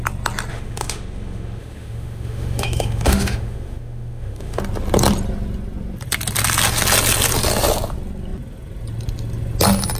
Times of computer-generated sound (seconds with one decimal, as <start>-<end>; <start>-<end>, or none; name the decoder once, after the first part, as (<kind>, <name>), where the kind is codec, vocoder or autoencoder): 0.5-4.6 (autoencoder, DAC-VAE)